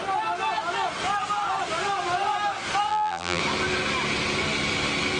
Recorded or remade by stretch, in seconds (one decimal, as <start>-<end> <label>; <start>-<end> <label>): 0.0-2.9 recorded; 2.9-3.4 remade; 3.4-5.2 recorded